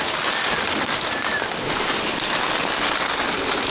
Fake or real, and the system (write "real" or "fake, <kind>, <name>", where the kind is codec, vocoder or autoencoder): real